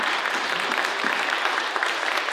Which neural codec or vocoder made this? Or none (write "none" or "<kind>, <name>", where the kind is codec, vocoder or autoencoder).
vocoder, BigVGAN v2